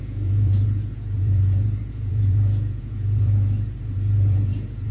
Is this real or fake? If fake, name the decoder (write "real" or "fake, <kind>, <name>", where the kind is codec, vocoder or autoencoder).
fake, vocoder, Vocos